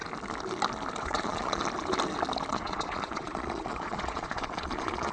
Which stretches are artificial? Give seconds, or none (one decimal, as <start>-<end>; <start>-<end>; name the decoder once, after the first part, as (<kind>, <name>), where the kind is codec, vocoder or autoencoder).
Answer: 1.0-1.6 (vocoder, Vocos); 2.5-5.1